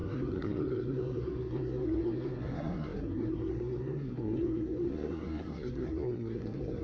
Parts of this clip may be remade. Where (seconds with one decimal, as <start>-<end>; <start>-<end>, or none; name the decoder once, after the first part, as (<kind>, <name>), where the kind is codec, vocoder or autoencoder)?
0.0-6.8 (codec, SNAC)